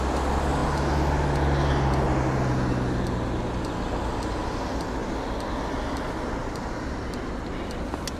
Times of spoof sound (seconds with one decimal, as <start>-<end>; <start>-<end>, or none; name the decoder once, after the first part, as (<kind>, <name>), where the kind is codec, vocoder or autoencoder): none